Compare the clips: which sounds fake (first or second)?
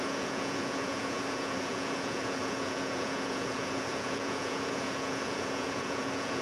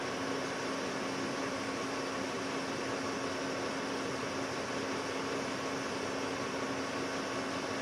first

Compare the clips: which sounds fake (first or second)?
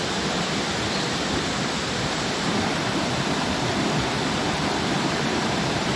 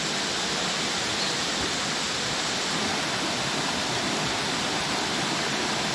first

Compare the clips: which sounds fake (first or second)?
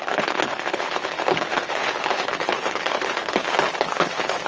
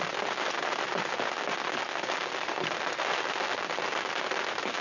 first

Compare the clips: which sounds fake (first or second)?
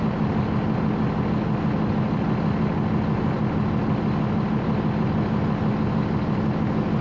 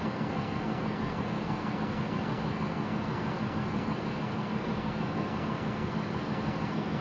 second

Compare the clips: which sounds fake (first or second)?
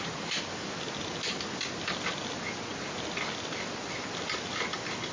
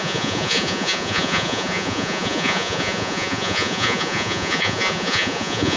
second